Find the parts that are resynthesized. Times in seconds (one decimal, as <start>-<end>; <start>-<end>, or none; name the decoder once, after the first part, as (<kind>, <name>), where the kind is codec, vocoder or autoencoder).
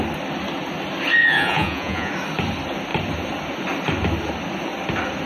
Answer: 1.2-2.1 (vocoder, Vocos)